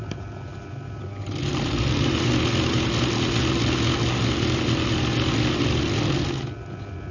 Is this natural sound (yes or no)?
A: yes